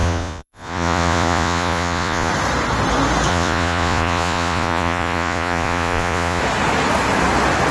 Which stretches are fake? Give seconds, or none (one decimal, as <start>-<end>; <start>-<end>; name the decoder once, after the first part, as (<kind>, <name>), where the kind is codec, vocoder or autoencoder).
0.0-2.3 (vocoder, Vocos); 3.3-6.4